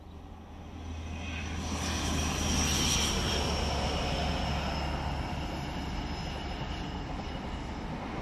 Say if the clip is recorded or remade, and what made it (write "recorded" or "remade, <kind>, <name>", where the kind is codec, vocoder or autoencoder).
recorded